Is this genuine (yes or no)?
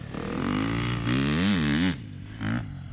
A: yes